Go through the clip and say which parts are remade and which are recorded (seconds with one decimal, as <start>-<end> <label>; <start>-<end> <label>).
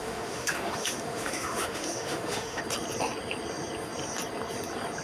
0.0-2.6 remade; 2.6-5.0 recorded